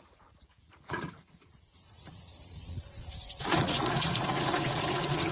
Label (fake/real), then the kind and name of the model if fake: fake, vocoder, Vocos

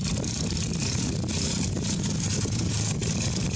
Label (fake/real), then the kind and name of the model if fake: real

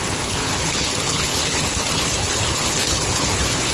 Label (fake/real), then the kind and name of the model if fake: fake, codec, HILCodec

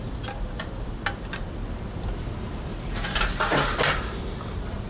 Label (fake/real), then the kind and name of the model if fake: real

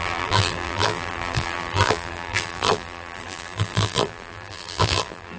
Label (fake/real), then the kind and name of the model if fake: fake, vocoder, BigVGAN v2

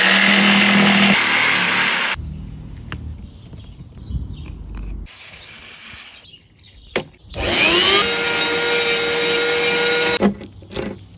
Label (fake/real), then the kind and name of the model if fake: real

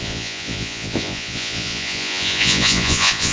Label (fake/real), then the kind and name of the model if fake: fake, vocoder, Vocos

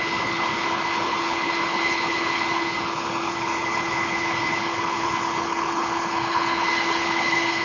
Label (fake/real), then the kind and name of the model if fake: fake, codec, HILCodec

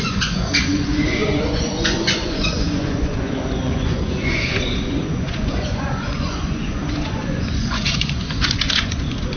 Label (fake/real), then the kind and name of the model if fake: fake, vocoder, Vocos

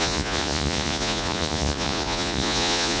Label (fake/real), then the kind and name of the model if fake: fake, vocoder, Vocos